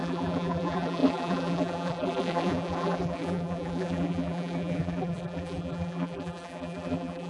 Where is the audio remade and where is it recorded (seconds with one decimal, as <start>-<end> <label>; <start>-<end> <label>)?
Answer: 0.0-7.3 remade

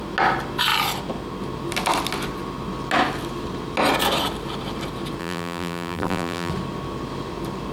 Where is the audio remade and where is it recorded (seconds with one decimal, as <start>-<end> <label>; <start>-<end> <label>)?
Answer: 0.0-5.2 recorded; 5.2-6.5 remade; 6.5-7.7 recorded

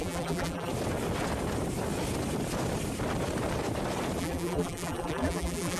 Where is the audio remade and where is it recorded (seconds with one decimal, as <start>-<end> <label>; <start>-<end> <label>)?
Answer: 0.0-0.7 remade; 0.7-4.2 recorded; 4.2-5.8 remade